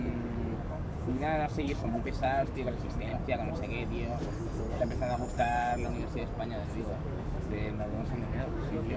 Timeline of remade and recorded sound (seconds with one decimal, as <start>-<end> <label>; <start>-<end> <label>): 0.0-3.1 remade; 3.1-4.7 recorded; 4.7-5.7 remade; 5.7-6.8 recorded; 6.8-9.0 remade